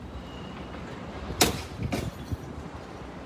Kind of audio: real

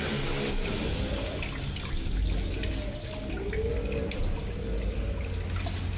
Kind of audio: real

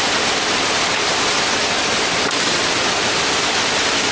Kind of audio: real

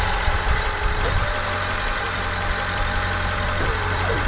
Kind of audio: fake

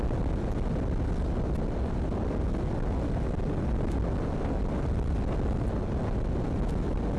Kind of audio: real